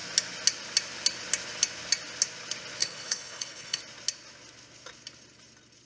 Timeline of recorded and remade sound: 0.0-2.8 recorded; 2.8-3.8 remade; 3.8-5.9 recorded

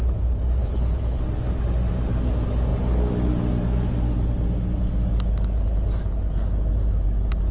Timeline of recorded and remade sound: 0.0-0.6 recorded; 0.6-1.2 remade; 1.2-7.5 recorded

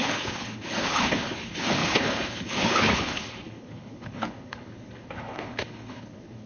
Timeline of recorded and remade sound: 0.0-6.5 remade